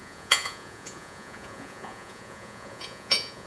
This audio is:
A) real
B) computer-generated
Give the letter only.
B